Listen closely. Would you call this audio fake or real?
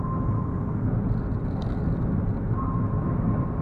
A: real